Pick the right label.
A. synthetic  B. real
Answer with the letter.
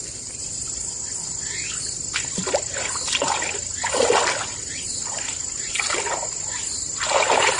B